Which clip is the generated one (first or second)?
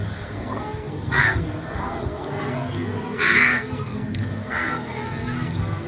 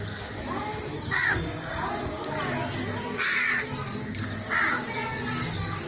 first